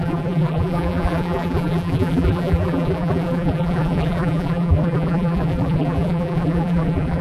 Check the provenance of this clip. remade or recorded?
remade